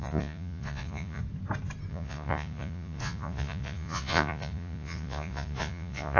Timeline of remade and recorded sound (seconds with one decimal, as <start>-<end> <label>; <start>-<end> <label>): 0.0-1.2 remade; 1.2-1.9 recorded; 1.9-6.2 remade

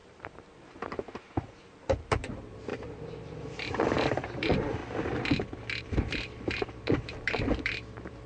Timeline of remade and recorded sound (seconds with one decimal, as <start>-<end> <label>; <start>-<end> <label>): 0.0-4.8 remade; 4.8-5.8 recorded; 5.8-8.3 remade

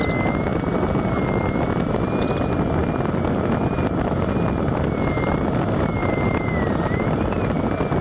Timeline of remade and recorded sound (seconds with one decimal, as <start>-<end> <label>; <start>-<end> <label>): 0.0-2.8 recorded; 2.8-4.7 remade; 4.7-6.0 recorded; 6.0-7.2 remade; 7.2-8.0 recorded

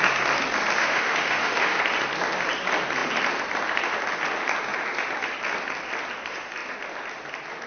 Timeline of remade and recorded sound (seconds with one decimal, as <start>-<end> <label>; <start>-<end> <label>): 0.0-0.8 recorded; 0.8-1.8 remade; 1.8-7.7 recorded

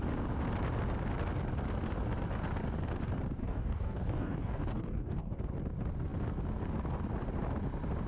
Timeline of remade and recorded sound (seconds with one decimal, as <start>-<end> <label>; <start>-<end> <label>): 0.0-3.4 recorded; 3.4-5.4 remade; 5.4-8.1 recorded

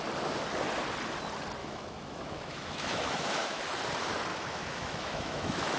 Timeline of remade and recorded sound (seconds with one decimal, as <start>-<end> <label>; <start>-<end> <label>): 0.0-1.6 recorded; 1.6-3.6 remade; 3.6-4.3 recorded; 4.3-5.8 remade